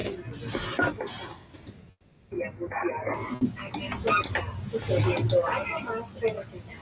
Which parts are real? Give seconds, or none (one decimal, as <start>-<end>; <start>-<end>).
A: 0.0-6.8